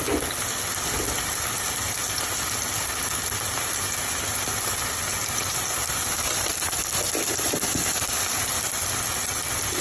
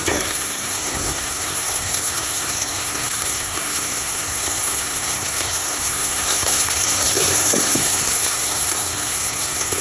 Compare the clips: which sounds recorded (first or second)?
first